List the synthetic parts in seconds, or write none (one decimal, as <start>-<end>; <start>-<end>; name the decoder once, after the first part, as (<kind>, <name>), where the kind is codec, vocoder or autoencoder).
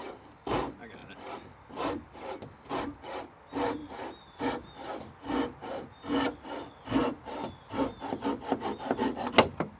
none